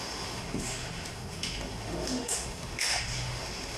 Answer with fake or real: fake